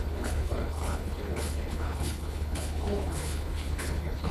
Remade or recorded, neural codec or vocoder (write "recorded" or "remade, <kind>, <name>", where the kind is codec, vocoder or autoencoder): remade, codec, HILCodec